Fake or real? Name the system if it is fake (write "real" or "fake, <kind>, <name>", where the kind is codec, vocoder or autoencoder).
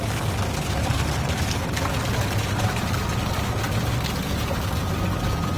real